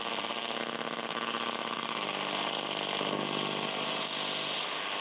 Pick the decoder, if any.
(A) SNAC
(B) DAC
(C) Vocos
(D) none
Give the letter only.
D